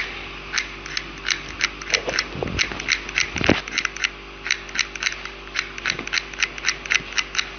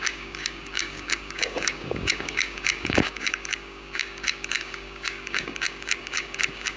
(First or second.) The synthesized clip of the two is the second